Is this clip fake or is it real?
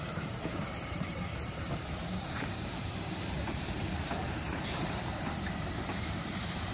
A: fake